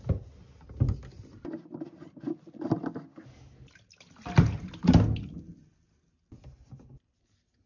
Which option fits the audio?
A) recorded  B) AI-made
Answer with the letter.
A